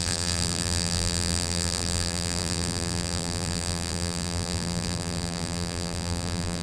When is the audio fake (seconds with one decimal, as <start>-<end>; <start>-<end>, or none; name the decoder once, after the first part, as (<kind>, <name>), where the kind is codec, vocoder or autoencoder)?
0.0-6.6 (vocoder, BigVGAN v2)